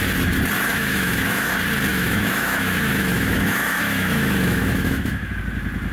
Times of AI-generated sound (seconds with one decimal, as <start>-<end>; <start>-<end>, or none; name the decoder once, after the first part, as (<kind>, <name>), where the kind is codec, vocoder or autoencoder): 0.7-1.5 (autoencoder, DAC-VAE); 1.9-5.4